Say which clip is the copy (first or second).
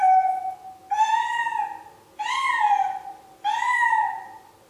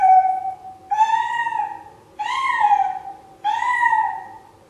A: second